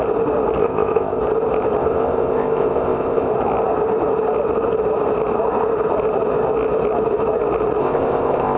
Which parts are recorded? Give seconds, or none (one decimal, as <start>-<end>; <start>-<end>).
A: 0.0-0.6; 1.2-1.8; 3.3-7.8